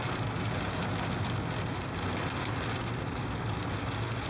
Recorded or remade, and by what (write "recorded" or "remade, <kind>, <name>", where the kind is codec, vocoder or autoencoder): recorded